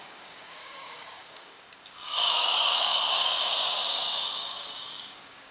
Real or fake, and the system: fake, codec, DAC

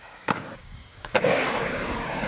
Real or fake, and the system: fake, codec, DAC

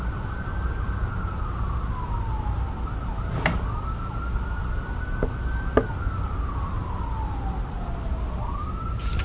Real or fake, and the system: real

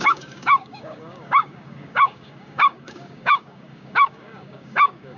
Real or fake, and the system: fake, codec, DAC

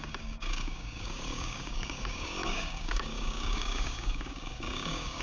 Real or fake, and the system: fake, codec, DAC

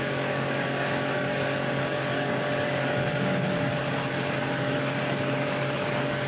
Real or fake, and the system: fake, codec, DAC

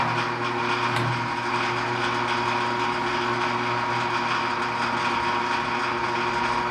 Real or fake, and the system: real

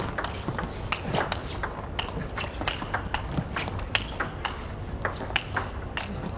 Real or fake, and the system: real